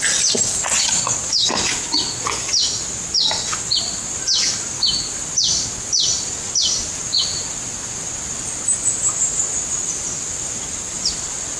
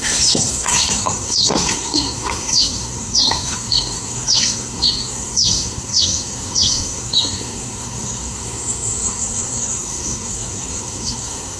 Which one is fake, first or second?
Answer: second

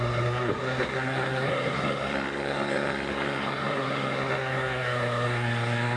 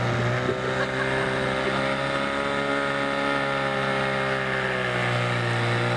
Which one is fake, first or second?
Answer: first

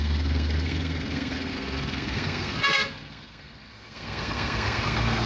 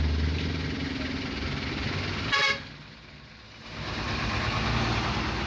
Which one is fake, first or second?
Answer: first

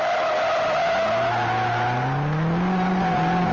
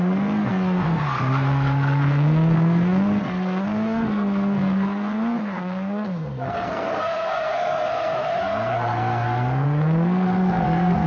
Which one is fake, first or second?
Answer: second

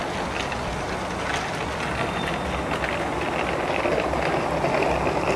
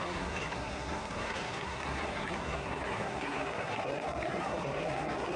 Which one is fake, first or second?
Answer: second